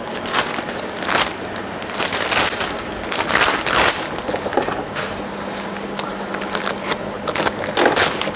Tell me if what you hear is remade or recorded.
recorded